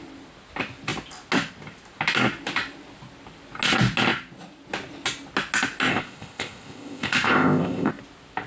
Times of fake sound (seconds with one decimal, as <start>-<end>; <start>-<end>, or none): 5.9-7.9